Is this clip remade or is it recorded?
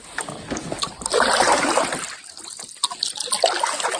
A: recorded